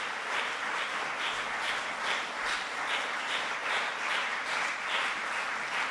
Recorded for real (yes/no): yes